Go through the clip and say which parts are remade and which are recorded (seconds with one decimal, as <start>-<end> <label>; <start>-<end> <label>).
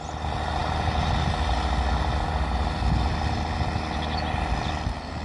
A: 0.0-5.2 recorded